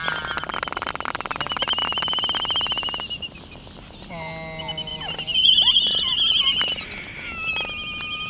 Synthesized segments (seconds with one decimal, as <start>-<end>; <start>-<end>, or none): 0.0-0.9; 1.8-4.1; 4.9-7.5